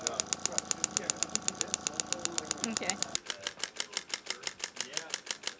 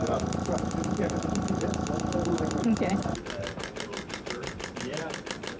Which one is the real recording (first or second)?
first